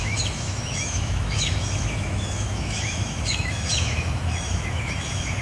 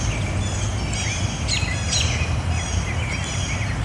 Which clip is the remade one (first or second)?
first